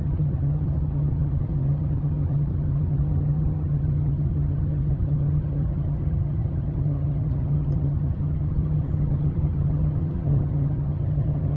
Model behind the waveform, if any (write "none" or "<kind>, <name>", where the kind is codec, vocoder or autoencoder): vocoder, HiFi-GAN